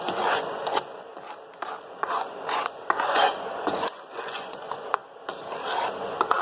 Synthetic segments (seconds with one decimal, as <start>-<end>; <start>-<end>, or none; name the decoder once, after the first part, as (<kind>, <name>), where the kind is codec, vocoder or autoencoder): 0.0-1.1 (vocoder, Vocos); 1.8-5.0; 5.9-6.4